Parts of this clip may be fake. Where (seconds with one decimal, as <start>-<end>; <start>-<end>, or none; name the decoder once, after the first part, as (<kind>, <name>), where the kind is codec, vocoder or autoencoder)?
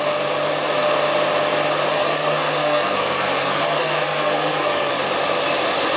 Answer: 1.9-4.9 (codec, SNAC)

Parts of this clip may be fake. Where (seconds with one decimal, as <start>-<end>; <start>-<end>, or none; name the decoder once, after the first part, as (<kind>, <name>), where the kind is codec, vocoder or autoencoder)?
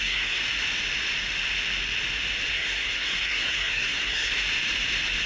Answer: 0.0-0.4 (codec, SNAC); 2.5-4.3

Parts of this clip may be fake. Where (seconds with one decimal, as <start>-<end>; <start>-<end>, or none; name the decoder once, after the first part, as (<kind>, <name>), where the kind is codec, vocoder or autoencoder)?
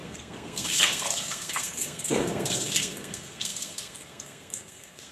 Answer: 0.0-5.1 (codec, SNAC)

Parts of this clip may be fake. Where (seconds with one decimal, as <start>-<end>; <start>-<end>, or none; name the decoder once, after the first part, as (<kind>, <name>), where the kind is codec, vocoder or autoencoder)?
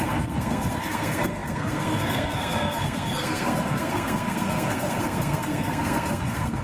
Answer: 0.0-6.6 (codec, SNAC)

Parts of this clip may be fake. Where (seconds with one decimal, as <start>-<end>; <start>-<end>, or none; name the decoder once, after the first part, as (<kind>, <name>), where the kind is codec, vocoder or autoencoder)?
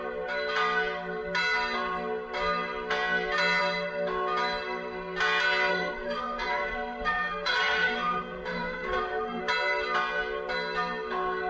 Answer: 5.7-9.4 (codec, SNAC)